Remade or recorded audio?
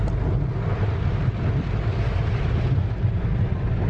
recorded